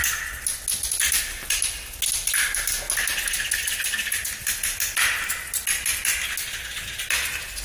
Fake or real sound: real